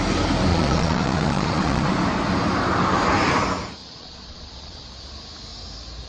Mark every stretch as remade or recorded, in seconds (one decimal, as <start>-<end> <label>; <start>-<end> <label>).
0.0-0.5 recorded; 0.5-1.9 remade; 1.9-3.8 recorded; 3.8-4.8 remade; 4.8-6.1 recorded